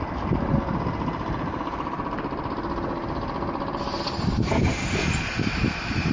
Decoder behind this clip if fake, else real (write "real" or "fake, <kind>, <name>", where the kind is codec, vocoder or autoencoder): fake, vocoder, BigVGAN v2